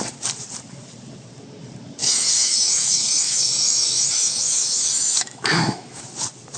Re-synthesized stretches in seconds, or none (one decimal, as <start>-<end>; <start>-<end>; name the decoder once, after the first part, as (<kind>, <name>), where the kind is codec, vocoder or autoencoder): 2.0-6.0 (autoencoder, DAC-VAE)